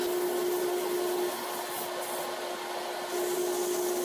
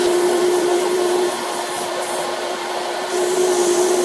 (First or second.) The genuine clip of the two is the first